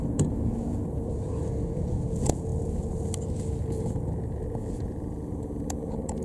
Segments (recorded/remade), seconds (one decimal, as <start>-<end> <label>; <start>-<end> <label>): 0.0-0.8 remade; 0.8-1.7 recorded; 1.7-2.5 remade; 2.5-3.6 recorded; 3.6-6.2 remade